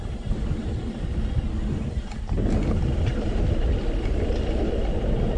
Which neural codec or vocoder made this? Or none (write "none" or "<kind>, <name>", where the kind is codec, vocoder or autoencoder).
none